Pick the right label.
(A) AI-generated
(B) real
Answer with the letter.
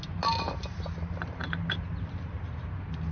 B